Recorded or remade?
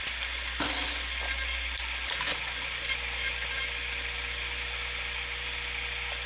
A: recorded